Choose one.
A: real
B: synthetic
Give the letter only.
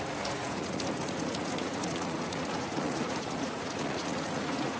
B